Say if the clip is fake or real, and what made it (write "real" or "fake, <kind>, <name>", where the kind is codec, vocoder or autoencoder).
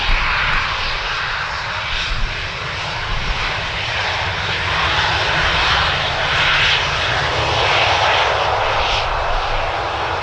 real